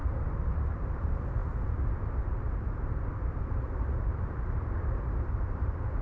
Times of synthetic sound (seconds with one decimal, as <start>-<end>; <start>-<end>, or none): 0.0-1.4; 3.4-6.0